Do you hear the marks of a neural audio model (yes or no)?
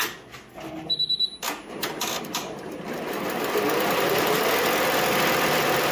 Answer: no